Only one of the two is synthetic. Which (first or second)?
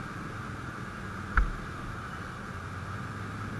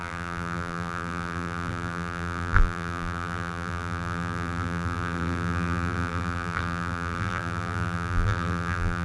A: second